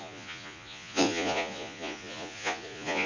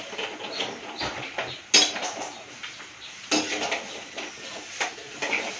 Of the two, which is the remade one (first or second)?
first